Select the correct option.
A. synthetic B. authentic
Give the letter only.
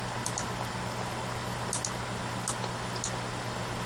B